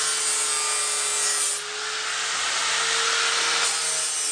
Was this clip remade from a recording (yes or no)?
no